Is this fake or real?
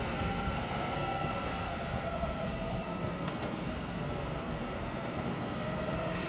fake